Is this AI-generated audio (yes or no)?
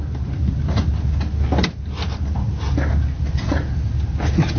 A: no